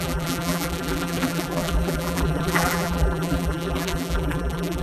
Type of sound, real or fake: fake